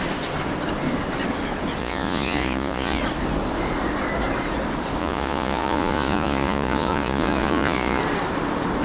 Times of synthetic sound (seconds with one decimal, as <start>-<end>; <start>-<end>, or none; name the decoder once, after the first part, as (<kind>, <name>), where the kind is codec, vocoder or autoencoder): 1.8-3.0 (vocoder, Vocos); 5.0-8.0